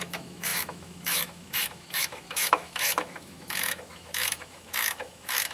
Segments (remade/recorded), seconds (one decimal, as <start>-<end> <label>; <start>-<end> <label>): 0.0-5.5 remade